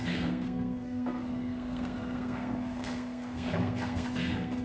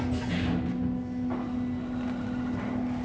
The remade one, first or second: first